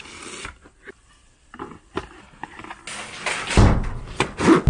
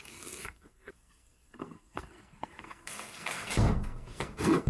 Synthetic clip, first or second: second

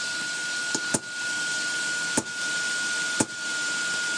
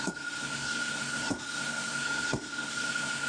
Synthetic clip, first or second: second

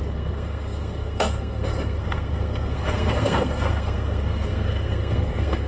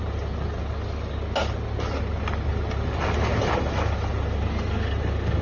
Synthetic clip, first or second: first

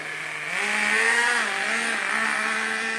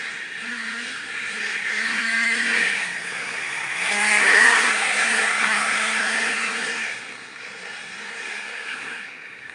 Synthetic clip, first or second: second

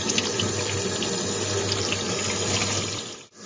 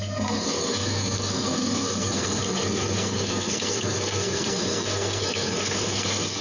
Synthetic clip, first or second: second